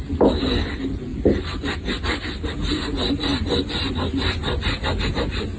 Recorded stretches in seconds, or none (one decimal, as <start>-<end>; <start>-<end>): 0.0-5.6